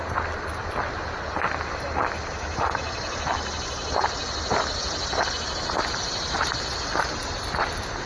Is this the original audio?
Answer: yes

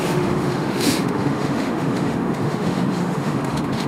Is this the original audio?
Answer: no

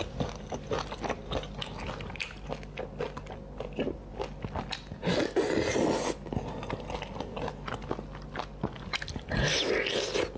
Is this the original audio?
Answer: yes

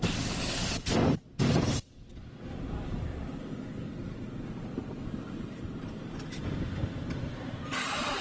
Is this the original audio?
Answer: yes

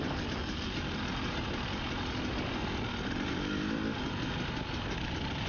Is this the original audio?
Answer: yes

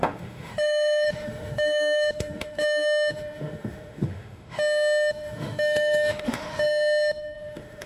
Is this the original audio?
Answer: no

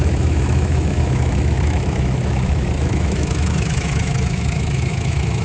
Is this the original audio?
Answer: no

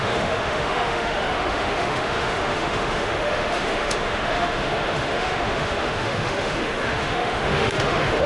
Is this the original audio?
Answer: no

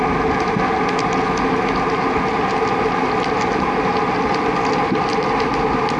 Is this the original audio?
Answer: yes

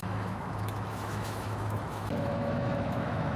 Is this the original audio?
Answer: no